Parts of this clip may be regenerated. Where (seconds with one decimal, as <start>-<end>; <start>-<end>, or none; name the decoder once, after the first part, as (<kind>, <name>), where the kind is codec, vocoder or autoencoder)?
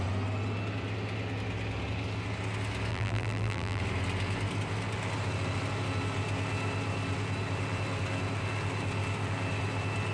2.9-3.8 (vocoder, BigVGAN v2)